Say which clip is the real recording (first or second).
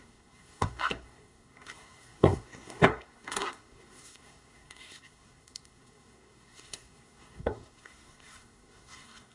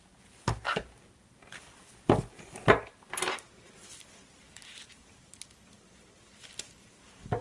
second